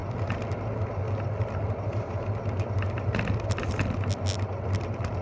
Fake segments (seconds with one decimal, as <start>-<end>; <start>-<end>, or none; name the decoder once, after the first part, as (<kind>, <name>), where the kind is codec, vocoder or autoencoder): none